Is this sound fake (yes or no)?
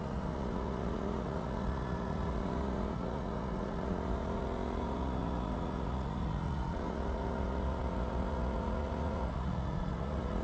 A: yes